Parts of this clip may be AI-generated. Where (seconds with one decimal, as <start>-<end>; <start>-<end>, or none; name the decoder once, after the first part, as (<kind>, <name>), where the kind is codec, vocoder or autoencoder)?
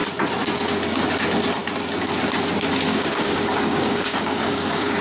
2.9-5.0 (codec, DAC)